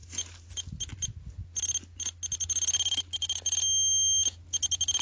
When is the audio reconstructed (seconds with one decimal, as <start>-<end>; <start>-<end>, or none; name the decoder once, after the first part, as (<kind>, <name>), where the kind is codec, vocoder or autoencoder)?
0.0-0.5 (vocoder, BigVGAN v2)